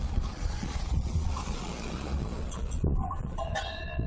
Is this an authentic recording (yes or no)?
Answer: no